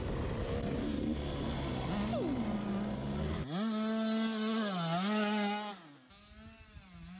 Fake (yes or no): no